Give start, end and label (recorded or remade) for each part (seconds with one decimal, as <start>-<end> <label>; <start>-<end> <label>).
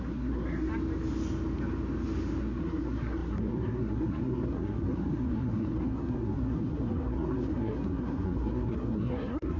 0.0-0.7 remade; 0.7-2.4 recorded; 2.4-9.6 remade